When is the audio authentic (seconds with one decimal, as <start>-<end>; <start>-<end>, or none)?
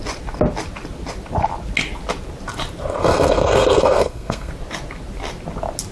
0.0-3.0; 4.5-5.9